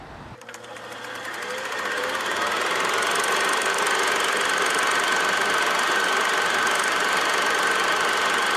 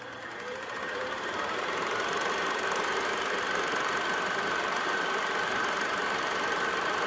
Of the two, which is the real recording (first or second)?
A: first